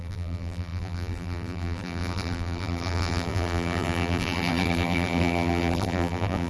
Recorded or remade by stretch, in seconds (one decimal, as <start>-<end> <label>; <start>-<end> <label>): 0.0-6.5 remade